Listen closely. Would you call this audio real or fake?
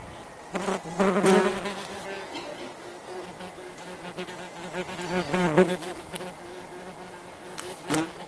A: real